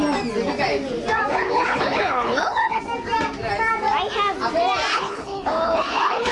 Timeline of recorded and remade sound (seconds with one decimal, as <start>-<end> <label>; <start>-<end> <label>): 0.0-1.3 recorded; 1.3-2.8 remade; 2.8-4.9 recorded; 4.9-6.3 remade